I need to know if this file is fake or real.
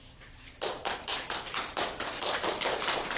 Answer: fake